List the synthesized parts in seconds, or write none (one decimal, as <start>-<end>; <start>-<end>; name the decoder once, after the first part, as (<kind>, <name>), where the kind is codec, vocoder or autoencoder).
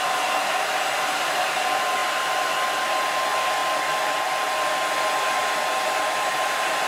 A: none